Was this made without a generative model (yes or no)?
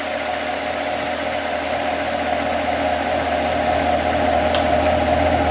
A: yes